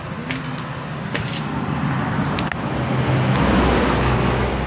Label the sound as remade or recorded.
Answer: recorded